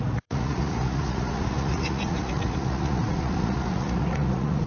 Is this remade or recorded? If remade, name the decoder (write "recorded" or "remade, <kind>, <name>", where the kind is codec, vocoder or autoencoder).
remade, vocoder, Vocos